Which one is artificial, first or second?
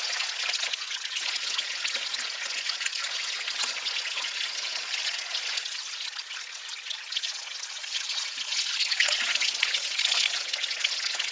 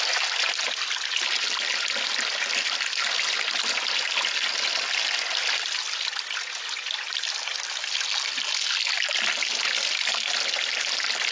first